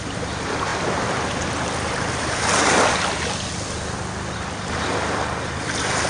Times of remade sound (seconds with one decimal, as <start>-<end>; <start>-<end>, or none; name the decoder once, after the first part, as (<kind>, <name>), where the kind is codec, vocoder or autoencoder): none